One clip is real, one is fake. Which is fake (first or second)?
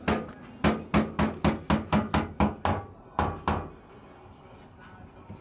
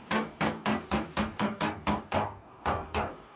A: second